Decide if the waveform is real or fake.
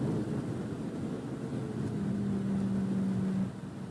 real